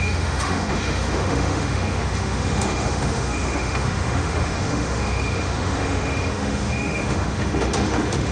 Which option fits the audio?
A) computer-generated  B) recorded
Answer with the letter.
A